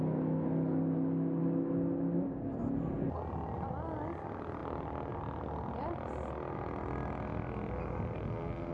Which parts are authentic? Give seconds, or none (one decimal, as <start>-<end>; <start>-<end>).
0.0-8.7